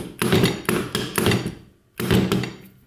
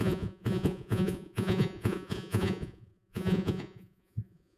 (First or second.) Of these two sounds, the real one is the first